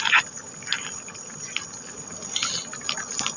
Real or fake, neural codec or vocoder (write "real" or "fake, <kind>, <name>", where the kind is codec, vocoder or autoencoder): real